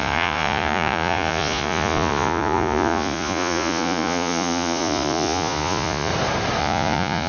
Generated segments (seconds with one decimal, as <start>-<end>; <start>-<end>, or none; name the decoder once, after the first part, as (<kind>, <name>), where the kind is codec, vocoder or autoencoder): 0.0-6.1 (vocoder, Vocos); 6.6-7.3